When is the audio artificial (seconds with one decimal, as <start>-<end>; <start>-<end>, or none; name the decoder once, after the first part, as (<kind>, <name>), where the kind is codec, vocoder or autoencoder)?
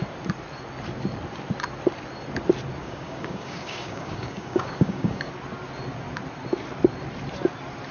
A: 2.8-5.3 (codec, DAC)